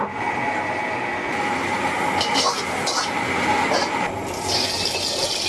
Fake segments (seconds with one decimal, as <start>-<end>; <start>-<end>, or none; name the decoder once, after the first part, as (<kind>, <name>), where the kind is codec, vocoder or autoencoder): none